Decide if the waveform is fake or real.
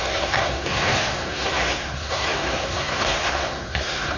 fake